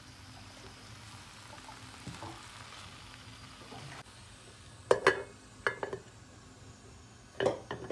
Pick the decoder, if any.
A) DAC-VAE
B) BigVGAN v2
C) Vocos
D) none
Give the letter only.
D